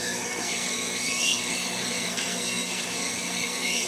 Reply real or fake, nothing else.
fake